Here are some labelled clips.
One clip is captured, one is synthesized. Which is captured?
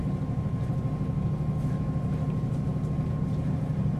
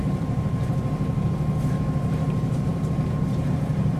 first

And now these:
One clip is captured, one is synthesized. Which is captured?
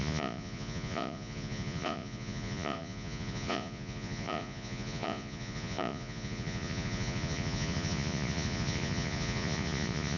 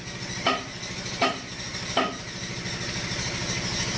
second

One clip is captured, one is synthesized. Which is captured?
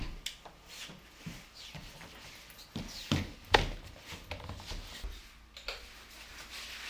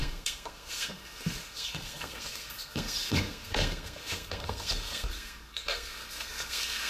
first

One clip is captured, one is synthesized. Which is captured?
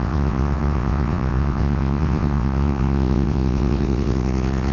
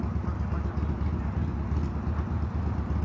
second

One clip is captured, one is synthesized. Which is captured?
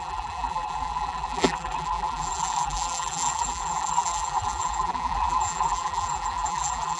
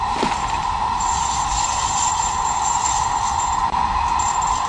second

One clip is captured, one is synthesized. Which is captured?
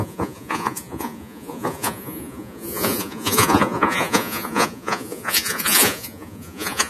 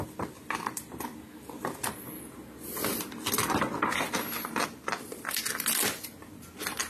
second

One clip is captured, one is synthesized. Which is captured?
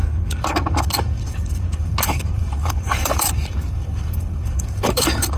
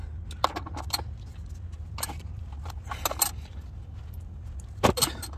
second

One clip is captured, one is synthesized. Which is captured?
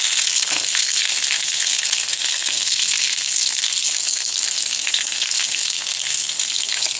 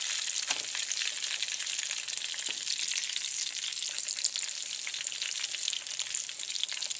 second